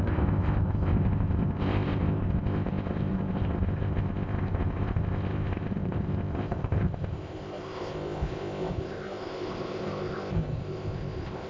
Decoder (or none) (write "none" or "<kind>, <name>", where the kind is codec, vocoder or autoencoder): codec, ZipCodec